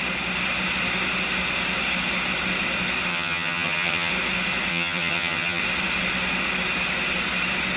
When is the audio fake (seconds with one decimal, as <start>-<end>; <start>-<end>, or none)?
3.1-4.1; 4.7-5.6